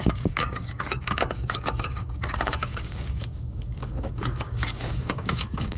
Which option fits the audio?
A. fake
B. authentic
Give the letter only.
A